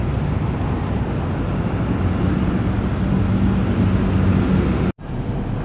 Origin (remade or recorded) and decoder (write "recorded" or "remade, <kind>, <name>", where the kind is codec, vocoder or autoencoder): recorded